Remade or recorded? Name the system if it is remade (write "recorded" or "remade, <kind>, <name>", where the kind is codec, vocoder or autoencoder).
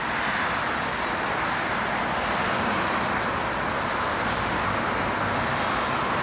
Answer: recorded